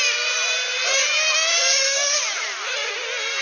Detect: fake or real real